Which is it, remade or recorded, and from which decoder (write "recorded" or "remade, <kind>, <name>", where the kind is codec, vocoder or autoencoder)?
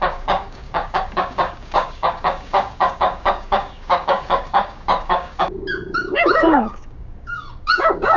remade, codec, DAC